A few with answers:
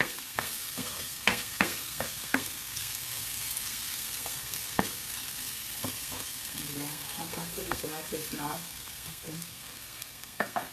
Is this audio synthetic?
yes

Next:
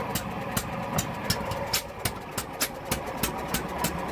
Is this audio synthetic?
no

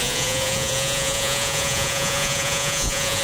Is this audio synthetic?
yes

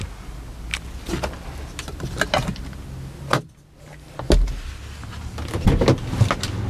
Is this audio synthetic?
no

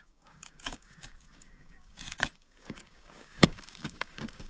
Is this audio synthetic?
yes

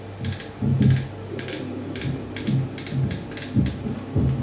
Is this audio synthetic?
no